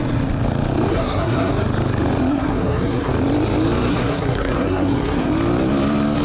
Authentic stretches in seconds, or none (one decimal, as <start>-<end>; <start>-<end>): 0.0-0.9; 1.5-2.3; 3.1-3.9; 5.3-6.2